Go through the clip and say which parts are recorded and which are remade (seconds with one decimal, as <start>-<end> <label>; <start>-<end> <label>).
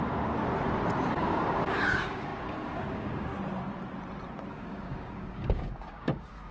0.0-0.4 remade; 0.4-1.1 recorded; 1.1-3.3 remade; 3.3-4.5 recorded; 4.5-6.5 remade